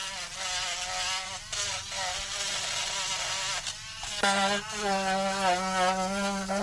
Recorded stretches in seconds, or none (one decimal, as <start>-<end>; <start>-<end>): 0.0-6.6